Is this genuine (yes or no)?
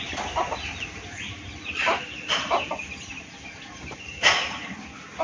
yes